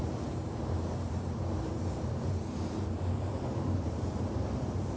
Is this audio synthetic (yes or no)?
yes